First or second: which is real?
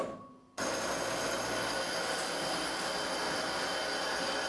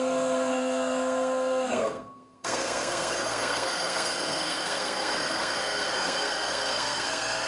first